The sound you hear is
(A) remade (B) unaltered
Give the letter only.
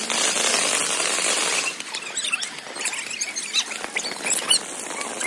B